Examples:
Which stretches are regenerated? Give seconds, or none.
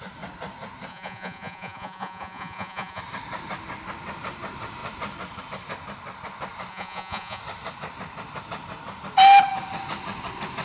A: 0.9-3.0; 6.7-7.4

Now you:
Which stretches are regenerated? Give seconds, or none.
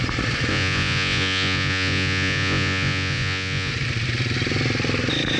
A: 0.5-3.7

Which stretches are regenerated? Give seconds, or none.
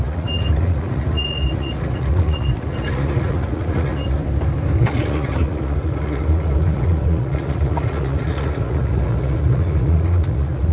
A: 0.0-4.2; 4.8-10.7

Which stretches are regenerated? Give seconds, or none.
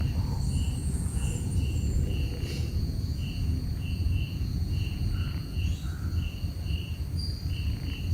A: 0.8-5.7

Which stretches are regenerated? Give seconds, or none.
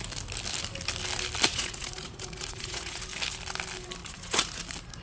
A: 1.5-3.0; 4.0-4.6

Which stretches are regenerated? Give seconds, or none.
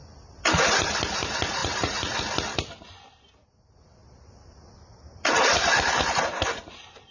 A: 1.6-2.2